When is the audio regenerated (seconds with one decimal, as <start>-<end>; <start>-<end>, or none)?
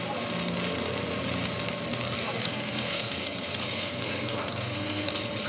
2.2-5.1